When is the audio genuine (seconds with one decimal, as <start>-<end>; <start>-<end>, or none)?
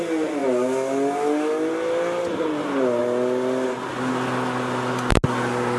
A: 0.0-5.8